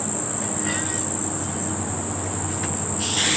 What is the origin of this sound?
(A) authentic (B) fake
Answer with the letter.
A